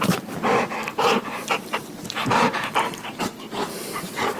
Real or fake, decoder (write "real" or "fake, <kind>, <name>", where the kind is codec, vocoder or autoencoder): real